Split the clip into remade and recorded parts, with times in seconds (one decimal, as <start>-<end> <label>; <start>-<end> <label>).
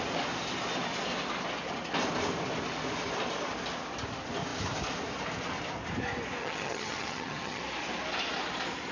0.0-6.4 recorded; 6.4-7.6 remade; 7.6-8.9 recorded